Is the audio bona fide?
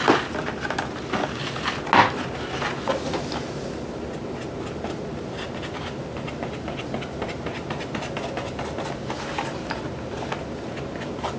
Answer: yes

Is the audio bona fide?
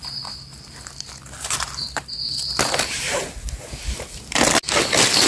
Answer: yes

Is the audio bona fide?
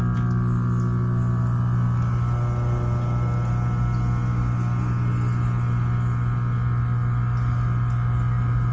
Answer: yes